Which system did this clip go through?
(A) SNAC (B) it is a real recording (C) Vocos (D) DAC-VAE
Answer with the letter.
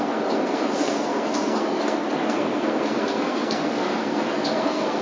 A